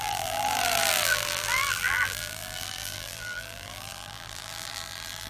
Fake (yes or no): yes